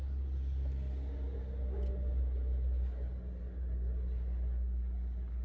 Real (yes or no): yes